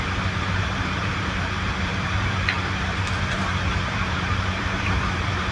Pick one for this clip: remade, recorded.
remade